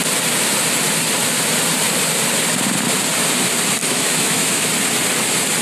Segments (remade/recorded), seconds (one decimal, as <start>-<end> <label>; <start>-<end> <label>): 0.0-3.8 recorded; 3.8-4.7 remade; 4.7-5.6 recorded